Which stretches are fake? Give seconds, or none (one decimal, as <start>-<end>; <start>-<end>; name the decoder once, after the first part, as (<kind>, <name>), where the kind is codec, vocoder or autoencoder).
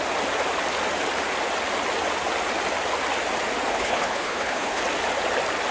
3.7-4.8 (codec, HILCodec)